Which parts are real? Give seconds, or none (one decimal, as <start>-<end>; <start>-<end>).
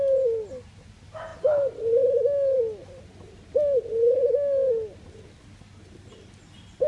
0.0-6.9